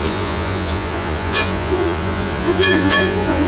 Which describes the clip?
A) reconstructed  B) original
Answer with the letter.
A